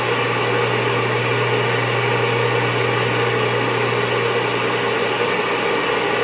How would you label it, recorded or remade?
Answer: recorded